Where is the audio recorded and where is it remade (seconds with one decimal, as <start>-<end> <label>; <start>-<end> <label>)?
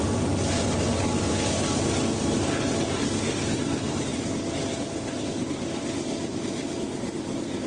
0.0-7.7 recorded